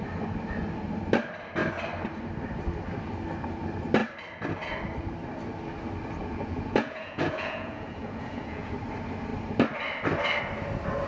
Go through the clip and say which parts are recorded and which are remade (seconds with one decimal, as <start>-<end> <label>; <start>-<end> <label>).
0.0-6.2 recorded; 6.2-8.7 remade; 8.7-11.1 recorded